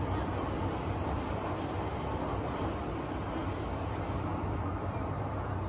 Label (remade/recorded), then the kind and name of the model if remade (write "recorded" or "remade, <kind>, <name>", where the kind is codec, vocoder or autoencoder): recorded